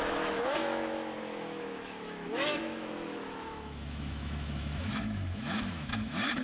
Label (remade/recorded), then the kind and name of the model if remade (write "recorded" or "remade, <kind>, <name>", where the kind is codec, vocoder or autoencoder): remade, autoencoder, DAC-VAE